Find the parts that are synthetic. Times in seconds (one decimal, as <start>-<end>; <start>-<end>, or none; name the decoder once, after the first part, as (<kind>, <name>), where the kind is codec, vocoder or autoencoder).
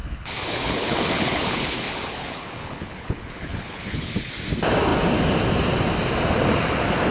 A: 0.0-4.3 (codec, HILCodec)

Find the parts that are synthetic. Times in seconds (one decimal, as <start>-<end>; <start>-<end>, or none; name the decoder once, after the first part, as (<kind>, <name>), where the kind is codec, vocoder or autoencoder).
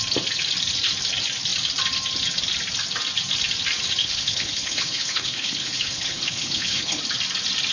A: 4.0-7.0 (codec, HILCodec)